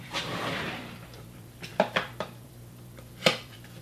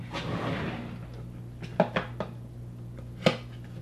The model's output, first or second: first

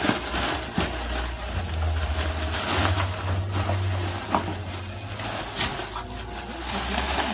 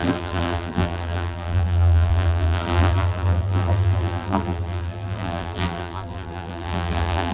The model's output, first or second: second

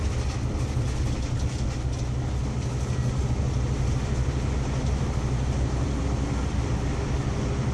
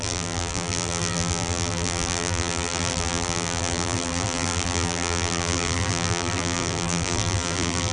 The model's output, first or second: second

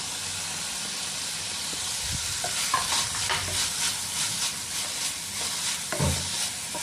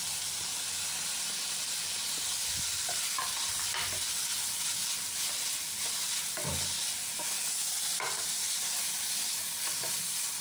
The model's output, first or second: first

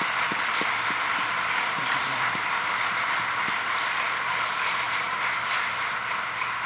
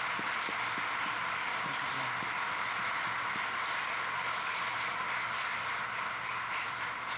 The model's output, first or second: first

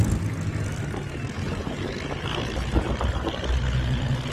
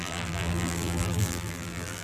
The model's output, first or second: second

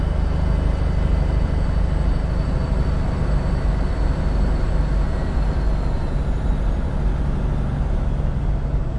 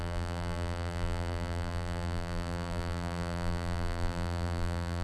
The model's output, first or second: second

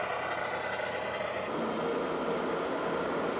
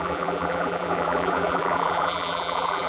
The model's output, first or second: second